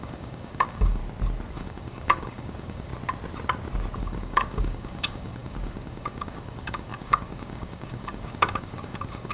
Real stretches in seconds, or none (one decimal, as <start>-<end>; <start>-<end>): 1.0-1.5; 2.9-4.0